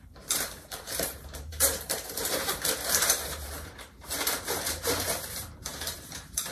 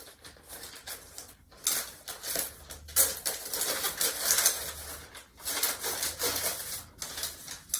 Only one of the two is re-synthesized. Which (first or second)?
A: first